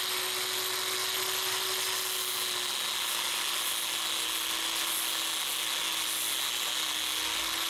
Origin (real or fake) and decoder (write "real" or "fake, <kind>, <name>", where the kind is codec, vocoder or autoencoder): real